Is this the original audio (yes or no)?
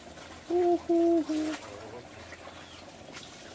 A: yes